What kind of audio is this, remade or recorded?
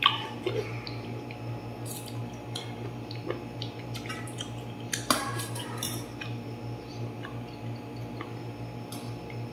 recorded